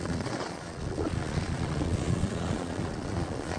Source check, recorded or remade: remade